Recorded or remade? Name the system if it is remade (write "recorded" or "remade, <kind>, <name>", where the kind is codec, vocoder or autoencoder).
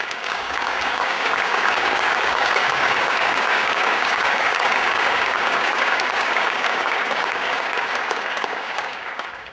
remade, codec, DAC